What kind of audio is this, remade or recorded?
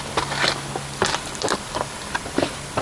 recorded